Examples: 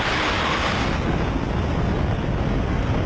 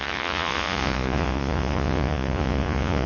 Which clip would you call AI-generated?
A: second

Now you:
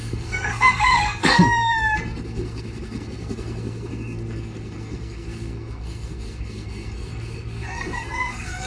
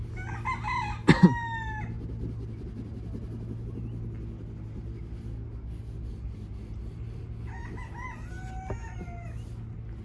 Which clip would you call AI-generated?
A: first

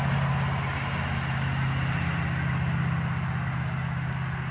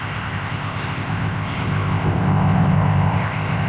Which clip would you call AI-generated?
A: second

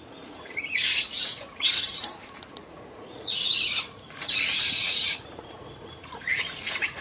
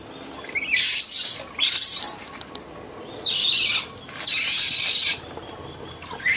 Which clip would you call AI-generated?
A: first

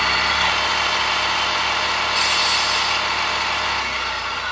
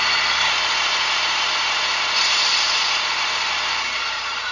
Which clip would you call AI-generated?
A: second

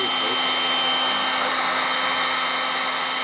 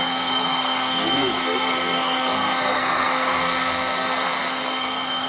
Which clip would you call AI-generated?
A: second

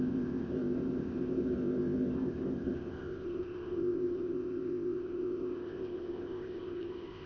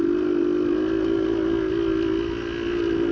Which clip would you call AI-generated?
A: first